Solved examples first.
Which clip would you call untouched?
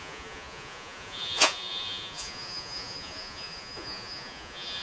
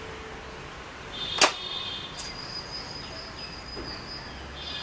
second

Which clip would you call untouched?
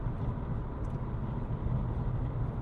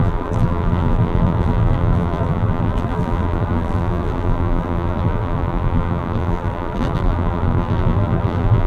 first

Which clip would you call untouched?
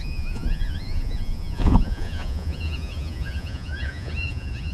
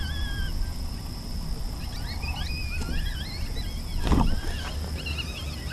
second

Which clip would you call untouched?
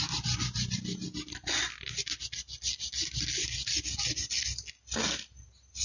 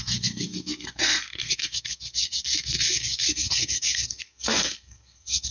first